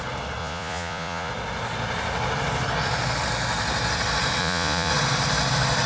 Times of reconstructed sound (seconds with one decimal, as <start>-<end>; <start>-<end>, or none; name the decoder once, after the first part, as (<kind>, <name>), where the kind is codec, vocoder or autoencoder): 0.4-1.3 (vocoder, Vocos); 4.4-4.9